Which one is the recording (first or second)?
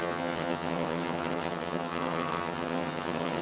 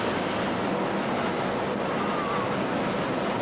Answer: second